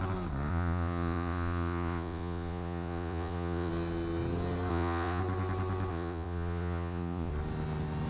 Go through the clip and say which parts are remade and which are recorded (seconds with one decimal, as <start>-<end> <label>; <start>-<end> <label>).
0.0-0.5 recorded; 0.5-3.7 remade; 3.7-4.7 recorded; 4.7-5.2 remade; 5.2-5.9 recorded; 5.9-7.3 remade; 7.3-8.1 recorded